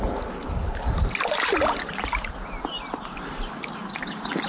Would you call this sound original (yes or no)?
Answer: yes